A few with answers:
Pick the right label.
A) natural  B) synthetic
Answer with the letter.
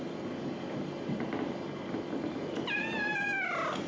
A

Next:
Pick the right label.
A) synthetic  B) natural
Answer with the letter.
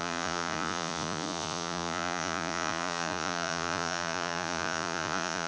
A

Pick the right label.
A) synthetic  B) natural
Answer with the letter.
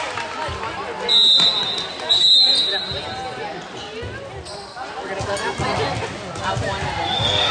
B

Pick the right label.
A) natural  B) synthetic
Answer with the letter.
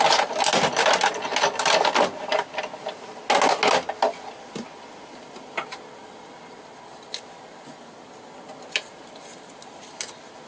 A